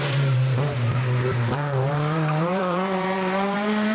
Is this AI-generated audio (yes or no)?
yes